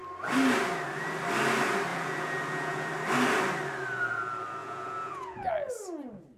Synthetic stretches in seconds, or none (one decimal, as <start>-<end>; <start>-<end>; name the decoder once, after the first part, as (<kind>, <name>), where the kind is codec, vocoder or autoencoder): 1.9-2.9 (vocoder, Vocos); 4.6-5.5